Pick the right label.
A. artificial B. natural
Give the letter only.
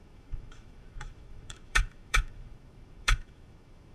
A